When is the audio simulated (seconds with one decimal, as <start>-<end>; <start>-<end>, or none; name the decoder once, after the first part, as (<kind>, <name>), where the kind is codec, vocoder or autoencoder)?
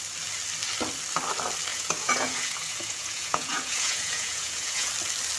1.7-4.9 (vocoder, Vocos)